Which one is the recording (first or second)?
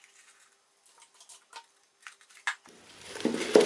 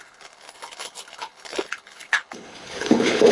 first